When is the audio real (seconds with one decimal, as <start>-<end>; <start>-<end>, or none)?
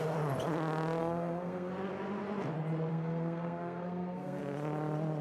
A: 0.0-1.0; 1.7-2.9; 4.4-5.2